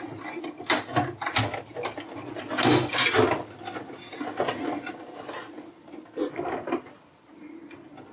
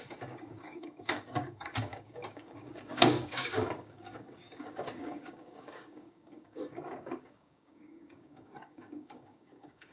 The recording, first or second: first